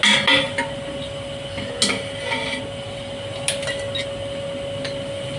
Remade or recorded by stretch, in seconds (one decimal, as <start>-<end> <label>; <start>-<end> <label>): 0.0-5.4 recorded